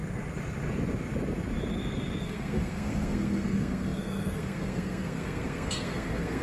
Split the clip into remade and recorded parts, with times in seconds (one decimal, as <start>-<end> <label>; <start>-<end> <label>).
0.0-2.2 recorded; 2.2-6.4 remade

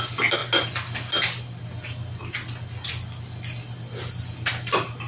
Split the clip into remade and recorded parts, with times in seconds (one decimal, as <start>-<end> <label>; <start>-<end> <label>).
0.0-5.1 recorded

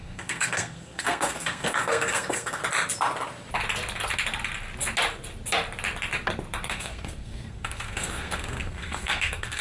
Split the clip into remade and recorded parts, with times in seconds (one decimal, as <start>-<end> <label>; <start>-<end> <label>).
0.0-2.6 remade; 2.6-6.7 recorded; 6.7-9.6 remade